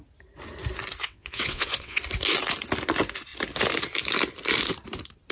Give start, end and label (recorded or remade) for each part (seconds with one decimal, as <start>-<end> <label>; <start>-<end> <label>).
0.0-1.0 recorded; 1.0-2.0 remade; 2.0-5.3 recorded